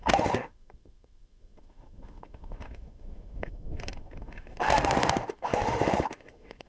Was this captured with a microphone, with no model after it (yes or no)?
no